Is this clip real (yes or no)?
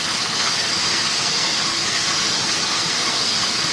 no